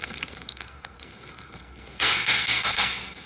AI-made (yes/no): yes